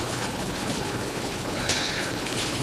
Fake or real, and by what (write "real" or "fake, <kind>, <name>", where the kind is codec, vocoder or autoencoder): fake, codec, HILCodec